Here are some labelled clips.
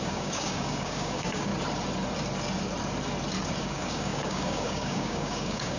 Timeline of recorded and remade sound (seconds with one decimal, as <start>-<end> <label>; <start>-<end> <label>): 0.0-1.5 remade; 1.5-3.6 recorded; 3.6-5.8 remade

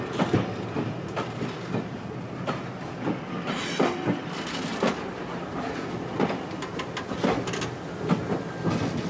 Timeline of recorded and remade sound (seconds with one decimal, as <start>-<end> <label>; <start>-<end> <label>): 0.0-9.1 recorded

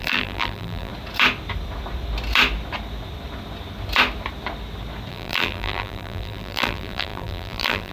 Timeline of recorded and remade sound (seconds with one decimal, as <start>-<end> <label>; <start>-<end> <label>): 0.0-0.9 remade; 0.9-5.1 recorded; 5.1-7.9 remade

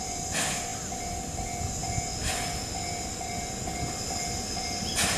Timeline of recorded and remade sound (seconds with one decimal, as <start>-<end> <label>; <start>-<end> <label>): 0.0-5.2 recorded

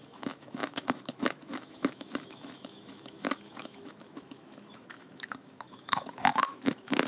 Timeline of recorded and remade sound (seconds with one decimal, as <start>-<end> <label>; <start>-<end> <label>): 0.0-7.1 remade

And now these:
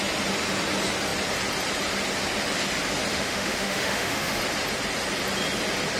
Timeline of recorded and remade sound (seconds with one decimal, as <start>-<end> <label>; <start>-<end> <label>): 0.0-3.1 recorded; 3.1-4.4 remade; 4.4-6.0 recorded

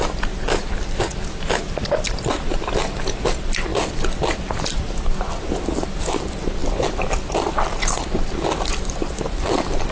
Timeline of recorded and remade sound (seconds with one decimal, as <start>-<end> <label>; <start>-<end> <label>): 0.0-9.9 recorded

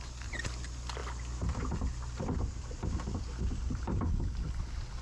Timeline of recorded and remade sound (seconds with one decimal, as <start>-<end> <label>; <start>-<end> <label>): 0.0-5.0 recorded